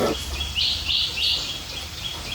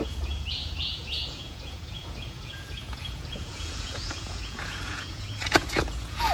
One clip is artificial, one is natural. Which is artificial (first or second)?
second